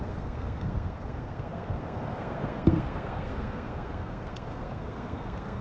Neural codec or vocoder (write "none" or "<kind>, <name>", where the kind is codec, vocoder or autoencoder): codec, SNAC